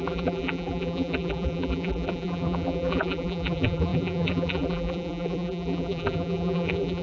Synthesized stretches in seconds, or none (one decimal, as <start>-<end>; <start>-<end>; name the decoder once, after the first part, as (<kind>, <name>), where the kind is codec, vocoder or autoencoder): 0.0-7.0 (vocoder, BigVGAN v2)